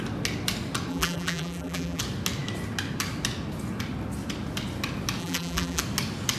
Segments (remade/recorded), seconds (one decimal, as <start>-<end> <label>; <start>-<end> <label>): 0.0-0.9 recorded; 0.9-2.0 remade; 2.0-5.2 recorded; 5.2-5.8 remade; 5.8-6.4 recorded